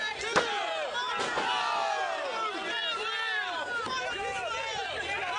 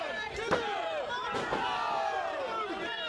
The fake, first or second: second